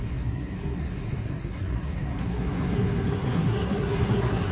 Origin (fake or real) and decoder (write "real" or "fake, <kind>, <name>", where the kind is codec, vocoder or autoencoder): fake, codec, SNAC